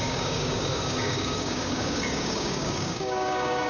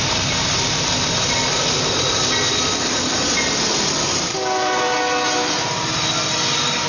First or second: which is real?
second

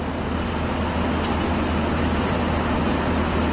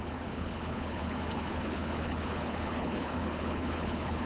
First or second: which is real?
first